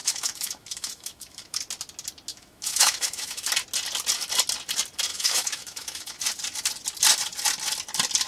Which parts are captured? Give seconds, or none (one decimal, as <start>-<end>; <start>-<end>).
1.6-2.3; 3.5-5.1; 6.2-8.3